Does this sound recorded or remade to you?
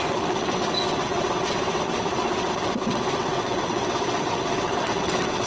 remade